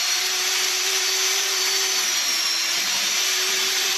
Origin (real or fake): fake